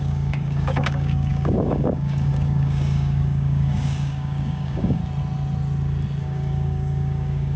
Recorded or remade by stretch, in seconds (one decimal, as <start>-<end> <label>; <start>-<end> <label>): 0.0-5.0 remade; 5.0-6.2 recorded; 6.2-7.6 remade